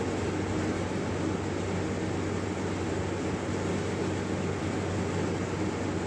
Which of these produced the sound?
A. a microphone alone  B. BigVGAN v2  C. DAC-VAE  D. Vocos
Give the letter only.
A